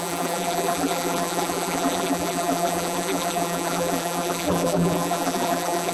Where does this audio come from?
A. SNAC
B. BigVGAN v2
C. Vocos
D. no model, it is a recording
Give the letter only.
B